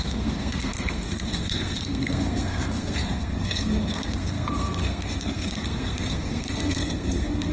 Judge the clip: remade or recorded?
remade